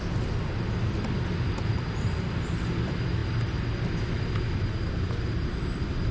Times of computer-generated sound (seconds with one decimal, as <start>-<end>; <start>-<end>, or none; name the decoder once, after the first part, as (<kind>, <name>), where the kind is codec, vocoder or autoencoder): none